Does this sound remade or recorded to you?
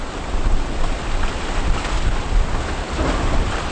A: recorded